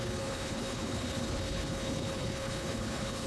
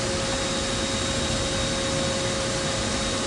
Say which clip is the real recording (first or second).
second